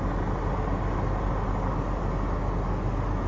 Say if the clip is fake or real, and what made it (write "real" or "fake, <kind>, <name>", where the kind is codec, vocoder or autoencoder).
real